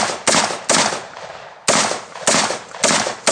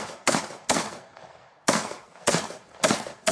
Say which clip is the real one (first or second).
first